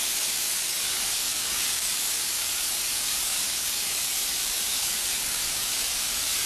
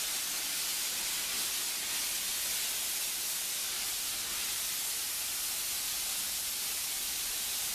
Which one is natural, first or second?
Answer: second